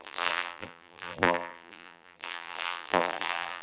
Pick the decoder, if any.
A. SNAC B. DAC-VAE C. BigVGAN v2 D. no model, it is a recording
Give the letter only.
C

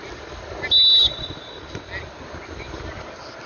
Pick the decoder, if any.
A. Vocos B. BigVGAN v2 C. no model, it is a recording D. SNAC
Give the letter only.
C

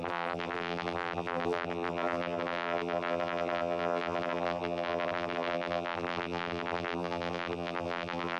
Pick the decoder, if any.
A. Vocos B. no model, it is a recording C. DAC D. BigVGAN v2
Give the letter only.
D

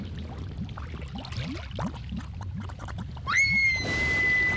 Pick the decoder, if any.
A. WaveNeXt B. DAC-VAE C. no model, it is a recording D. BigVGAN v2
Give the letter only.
C